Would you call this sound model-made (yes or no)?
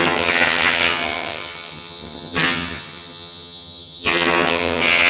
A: yes